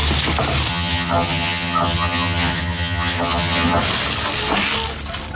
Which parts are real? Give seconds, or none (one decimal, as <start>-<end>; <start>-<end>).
0.0-0.7; 3.8-5.4